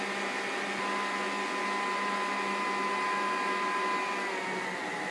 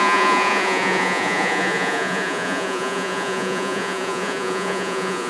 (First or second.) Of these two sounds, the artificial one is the second